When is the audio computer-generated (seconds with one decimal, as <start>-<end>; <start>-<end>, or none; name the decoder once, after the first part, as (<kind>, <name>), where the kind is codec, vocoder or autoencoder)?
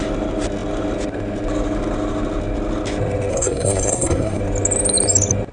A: 3.3-4.4 (codec, SNAC)